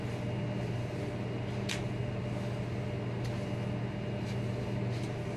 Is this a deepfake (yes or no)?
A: no